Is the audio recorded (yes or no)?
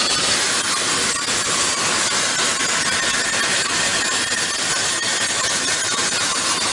yes